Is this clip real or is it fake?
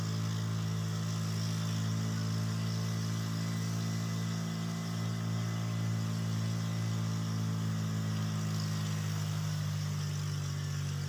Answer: real